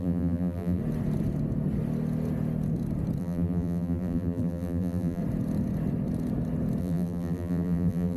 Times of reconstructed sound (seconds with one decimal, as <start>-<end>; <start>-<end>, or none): 0.0-0.8; 3.2-5.2; 6.8-8.2